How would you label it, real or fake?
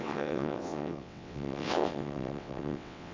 fake